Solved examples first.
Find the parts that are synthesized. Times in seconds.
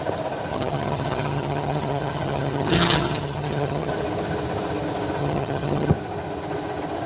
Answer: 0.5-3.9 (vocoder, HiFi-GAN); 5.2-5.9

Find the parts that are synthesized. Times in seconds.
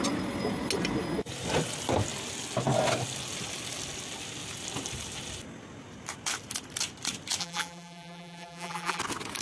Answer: 7.4-9.0 (vocoder, BigVGAN v2)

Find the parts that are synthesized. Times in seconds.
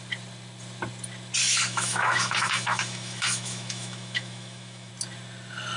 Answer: 1.4-4.9 (autoencoder, DAC-VAE)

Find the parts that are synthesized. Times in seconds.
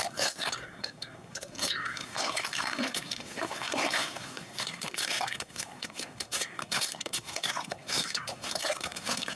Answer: 0.0-9.4 (codec, SNAC)